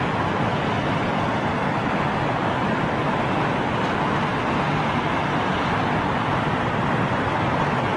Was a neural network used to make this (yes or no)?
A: no